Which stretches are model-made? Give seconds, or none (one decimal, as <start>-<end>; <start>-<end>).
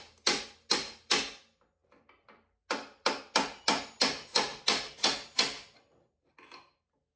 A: none